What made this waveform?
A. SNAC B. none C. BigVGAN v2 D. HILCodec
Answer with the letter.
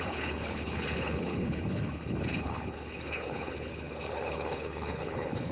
D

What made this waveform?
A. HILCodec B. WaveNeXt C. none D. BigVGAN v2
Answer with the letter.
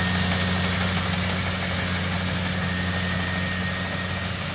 C